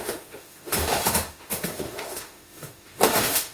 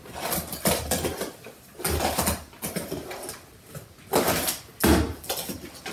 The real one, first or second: second